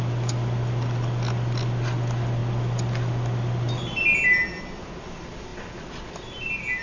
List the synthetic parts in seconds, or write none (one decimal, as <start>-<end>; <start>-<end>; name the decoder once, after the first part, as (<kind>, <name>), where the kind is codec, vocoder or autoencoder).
none